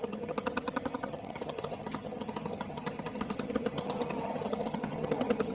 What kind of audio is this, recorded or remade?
remade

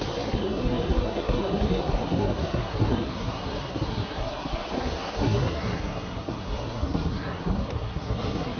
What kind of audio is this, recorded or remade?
remade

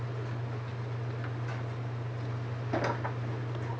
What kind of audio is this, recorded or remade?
recorded